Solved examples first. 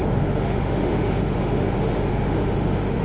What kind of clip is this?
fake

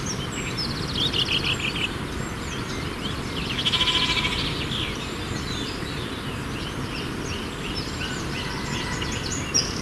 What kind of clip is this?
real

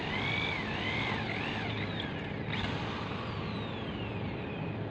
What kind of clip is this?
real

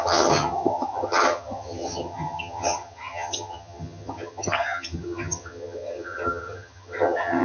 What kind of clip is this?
fake